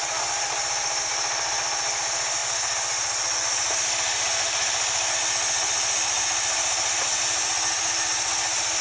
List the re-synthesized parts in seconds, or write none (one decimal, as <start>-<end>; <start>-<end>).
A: none